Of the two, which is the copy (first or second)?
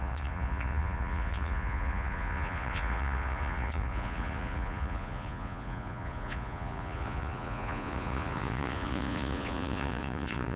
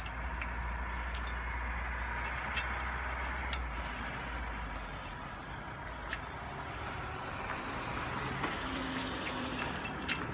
first